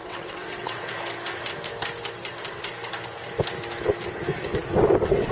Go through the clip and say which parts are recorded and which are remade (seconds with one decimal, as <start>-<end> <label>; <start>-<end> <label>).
0.0-0.9 remade; 0.9-5.3 recorded